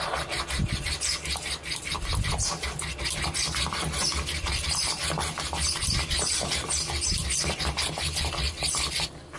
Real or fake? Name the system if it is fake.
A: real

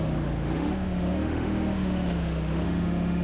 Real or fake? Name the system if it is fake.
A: fake, autoencoder, DAC-VAE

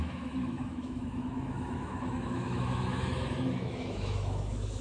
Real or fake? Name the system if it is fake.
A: fake, autoencoder, DAC-VAE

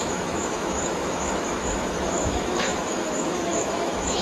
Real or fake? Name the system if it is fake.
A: fake, autoencoder, DAC-VAE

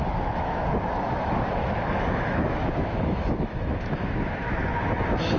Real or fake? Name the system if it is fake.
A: fake, autoencoder, DAC-VAE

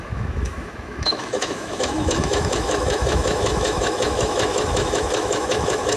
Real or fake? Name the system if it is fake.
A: fake, autoencoder, DAC-VAE